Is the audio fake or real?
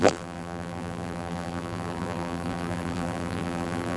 fake